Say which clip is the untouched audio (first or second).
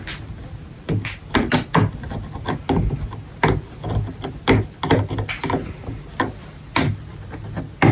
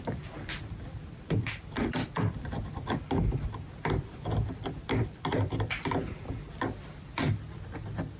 first